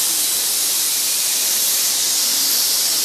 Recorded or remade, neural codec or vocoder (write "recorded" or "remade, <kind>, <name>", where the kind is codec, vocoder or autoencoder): recorded